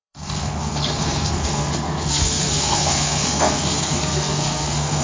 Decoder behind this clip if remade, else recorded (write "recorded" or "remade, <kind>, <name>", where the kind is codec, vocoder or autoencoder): remade, codec, SNAC